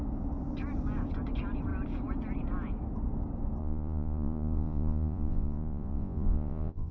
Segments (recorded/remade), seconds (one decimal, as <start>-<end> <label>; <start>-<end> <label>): 0.0-3.6 recorded; 3.6-6.9 remade